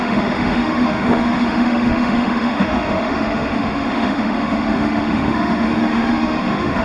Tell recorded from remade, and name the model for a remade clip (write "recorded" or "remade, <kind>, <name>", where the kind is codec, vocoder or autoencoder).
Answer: remade, autoencoder, DAC-VAE